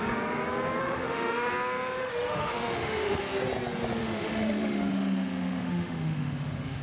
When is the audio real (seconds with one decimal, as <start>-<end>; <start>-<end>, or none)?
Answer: 0.0-0.8; 1.5-2.0; 3.2-4.0